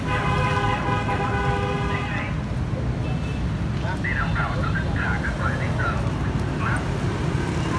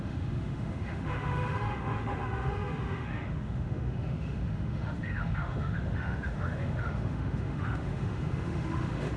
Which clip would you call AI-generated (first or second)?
second